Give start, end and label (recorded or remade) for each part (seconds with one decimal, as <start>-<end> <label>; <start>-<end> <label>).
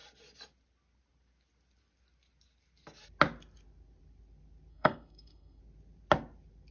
0.0-4.7 recorded; 4.7-5.6 remade; 5.6-6.7 recorded